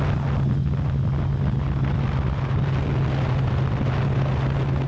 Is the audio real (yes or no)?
yes